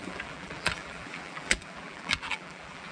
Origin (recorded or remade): remade